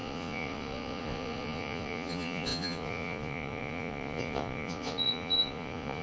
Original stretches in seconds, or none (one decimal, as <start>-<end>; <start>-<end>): none